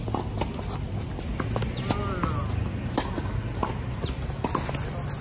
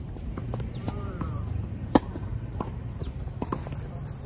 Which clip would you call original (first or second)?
first